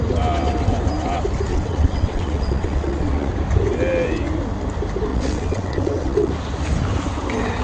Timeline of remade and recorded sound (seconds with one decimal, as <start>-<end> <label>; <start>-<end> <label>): 0.0-1.5 recorded; 1.5-3.3 remade; 3.3-5.1 recorded; 5.1-6.3 remade; 6.3-7.6 recorded